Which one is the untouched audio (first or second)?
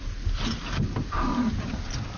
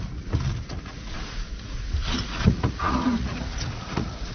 first